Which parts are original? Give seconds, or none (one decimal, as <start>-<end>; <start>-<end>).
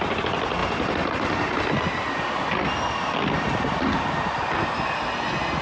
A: 0.0-5.6